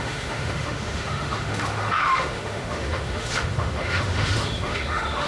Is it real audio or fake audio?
fake